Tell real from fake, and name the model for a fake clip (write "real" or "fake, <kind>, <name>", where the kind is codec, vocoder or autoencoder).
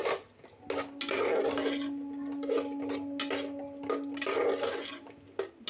real